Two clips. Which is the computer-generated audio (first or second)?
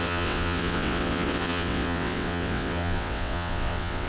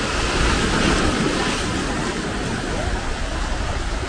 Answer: first